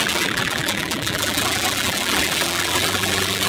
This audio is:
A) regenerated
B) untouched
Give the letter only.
A